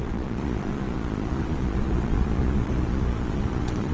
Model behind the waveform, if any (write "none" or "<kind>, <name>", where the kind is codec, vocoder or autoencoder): vocoder, Vocos